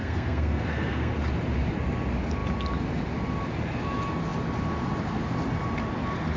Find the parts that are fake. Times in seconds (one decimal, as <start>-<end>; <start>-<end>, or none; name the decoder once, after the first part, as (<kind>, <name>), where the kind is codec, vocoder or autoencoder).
0.0-1.1 (codec, SNAC)